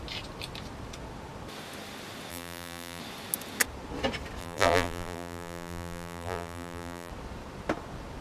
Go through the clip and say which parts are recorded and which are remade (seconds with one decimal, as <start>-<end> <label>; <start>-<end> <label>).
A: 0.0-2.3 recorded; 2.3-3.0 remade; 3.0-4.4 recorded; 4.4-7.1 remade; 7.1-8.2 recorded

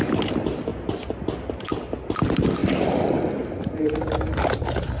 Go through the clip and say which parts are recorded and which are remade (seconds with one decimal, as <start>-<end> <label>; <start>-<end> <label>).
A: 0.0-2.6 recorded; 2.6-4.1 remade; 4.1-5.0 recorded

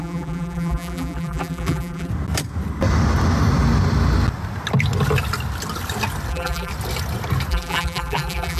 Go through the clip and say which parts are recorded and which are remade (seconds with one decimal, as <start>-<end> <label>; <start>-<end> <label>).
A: 0.0-2.1 remade; 2.1-6.3 recorded; 6.3-6.7 remade; 6.7-7.5 recorded; 7.5-8.6 remade